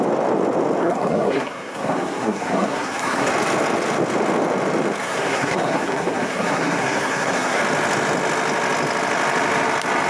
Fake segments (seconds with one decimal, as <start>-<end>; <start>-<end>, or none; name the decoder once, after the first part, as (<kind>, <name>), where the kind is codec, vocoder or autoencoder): 0.8-3.3 (codec, SNAC); 5.0-7.6